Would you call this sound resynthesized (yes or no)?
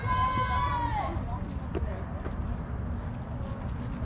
no